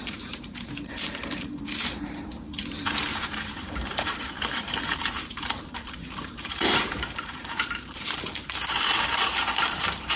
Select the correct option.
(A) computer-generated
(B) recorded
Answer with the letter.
A